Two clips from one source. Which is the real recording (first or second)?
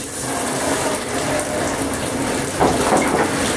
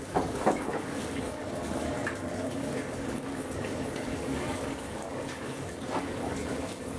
first